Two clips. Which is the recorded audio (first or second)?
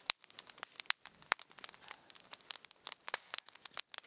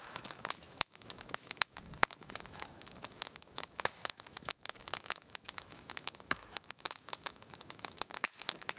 first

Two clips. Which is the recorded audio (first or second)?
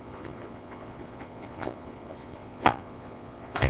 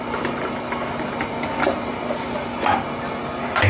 second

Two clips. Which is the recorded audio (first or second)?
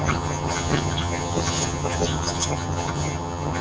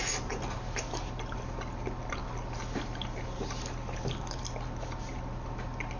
second